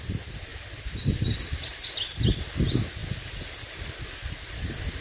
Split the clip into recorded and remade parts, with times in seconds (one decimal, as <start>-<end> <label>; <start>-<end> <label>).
0.0-5.0 recorded